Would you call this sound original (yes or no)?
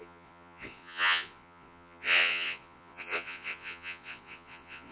no